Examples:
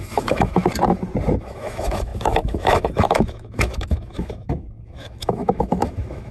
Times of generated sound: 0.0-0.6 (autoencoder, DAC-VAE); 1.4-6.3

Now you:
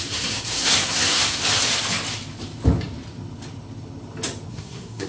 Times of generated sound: 0.0-1.4 (codec, SNAC); 4.5-5.1

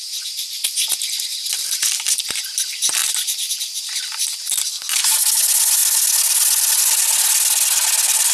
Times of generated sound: none

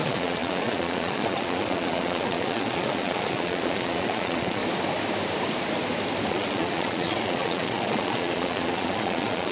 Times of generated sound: 0.0-4.6 (vocoder, Vocos); 6.3-9.5

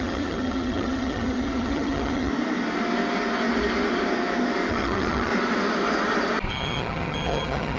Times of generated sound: 0.0-2.3 (vocoder, HiFi-GAN); 4.7-5.3; 6.5-7.8

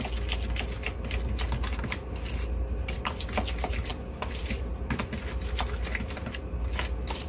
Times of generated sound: none